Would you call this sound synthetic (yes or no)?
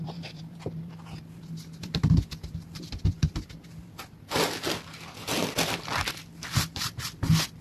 yes